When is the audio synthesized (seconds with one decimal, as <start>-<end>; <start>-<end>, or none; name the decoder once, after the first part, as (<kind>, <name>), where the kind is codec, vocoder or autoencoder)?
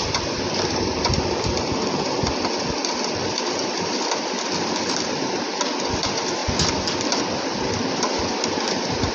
0.0-6.4 (vocoder, BigVGAN v2); 7.2-9.1